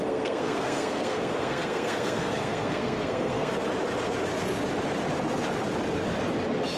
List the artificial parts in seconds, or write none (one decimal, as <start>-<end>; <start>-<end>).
0.0-3.5